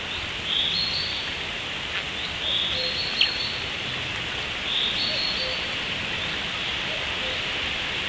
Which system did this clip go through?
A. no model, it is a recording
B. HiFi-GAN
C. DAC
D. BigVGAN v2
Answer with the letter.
A